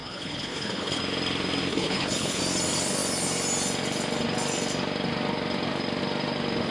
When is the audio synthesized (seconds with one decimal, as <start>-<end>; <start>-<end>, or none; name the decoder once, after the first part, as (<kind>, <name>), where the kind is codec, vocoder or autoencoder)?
0.0-1.0 (codec, HILCodec); 1.7-2.4